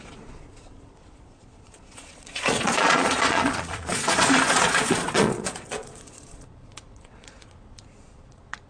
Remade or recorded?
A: remade